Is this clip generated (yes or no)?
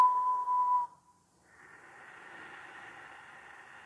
no